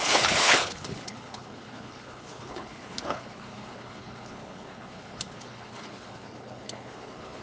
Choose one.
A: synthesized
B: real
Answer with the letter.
A